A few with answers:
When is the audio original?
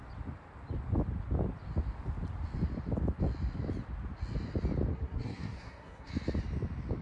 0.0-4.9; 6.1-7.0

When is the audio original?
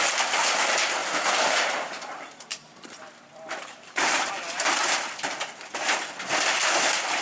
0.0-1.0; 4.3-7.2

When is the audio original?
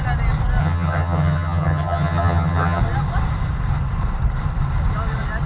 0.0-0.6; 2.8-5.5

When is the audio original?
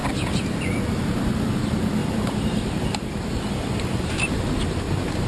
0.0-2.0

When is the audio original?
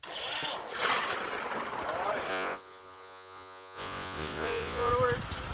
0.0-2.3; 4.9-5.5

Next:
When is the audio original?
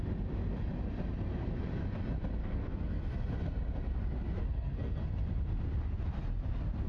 0.0-2.4; 3.0-4.4; 5.0-6.9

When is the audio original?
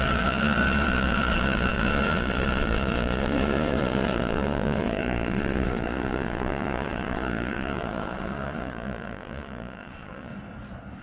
10.3-11.0